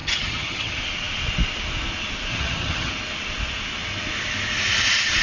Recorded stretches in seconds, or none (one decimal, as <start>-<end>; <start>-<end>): 0.8-2.3; 2.9-5.2